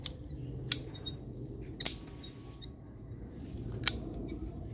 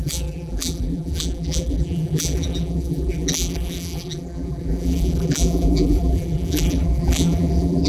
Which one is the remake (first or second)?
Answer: second